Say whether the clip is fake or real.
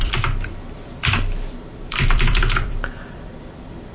fake